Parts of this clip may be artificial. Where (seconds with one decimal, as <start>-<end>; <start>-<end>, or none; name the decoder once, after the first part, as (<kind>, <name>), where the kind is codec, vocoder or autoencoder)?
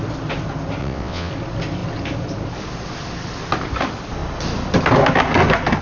0.8-1.3 (vocoder, WaveNeXt)